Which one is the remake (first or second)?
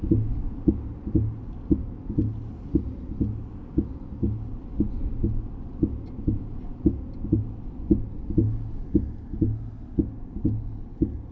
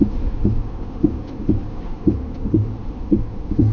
second